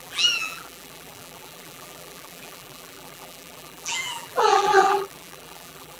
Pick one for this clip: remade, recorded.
remade